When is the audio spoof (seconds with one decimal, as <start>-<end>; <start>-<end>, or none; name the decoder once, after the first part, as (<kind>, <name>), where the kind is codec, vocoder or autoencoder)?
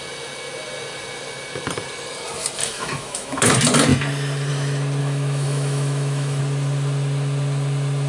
2.6-3.5 (autoencoder, DAC-VAE); 5.0-6.4